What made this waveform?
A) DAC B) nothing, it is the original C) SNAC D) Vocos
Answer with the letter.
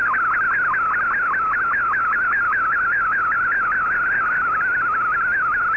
B